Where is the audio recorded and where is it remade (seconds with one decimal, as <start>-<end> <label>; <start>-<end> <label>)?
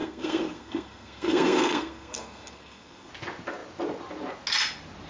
0.0-3.1 remade; 3.1-5.1 recorded